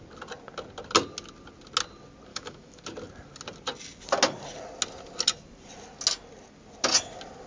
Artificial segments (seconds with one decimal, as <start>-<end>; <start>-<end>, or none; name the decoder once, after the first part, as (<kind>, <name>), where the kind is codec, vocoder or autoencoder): 2.3-2.8 (autoencoder, DAC-VAE)

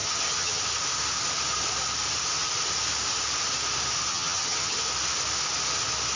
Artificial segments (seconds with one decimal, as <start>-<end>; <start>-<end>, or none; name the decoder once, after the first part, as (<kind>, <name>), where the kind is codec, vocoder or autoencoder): 0.0-0.6 (vocoder, HiFi-GAN); 4.1-4.8